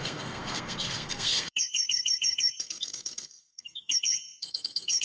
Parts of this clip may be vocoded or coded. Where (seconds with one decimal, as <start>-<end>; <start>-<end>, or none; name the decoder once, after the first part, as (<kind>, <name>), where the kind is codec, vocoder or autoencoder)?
0.0-5.0 (codec, SNAC)